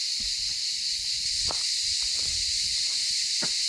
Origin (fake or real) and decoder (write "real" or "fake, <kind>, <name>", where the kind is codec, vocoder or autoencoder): fake, vocoder, BigVGAN v2